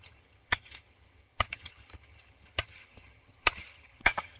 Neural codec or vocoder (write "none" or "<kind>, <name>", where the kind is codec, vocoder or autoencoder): vocoder, HiFi-GAN